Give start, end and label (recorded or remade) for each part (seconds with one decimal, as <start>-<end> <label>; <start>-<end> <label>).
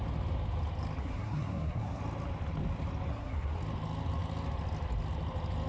0.0-1.0 recorded; 1.0-2.0 remade; 2.0-3.1 recorded; 3.1-3.6 remade; 3.6-5.7 recorded